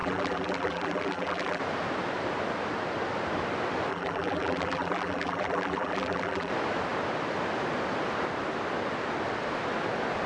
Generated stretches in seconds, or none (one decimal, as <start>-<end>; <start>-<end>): 0.0-1.6; 3.9-6.5